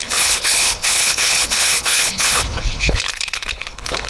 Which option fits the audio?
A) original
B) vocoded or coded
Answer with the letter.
B